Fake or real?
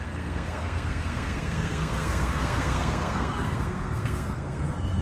fake